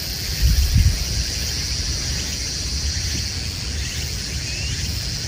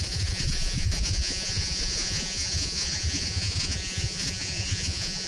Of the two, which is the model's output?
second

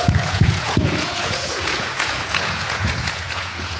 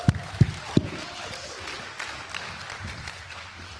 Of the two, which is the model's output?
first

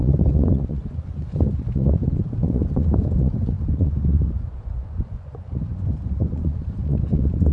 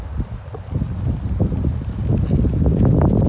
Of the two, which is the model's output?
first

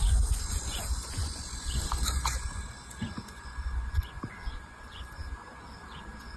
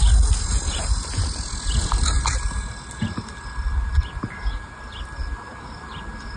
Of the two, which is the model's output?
first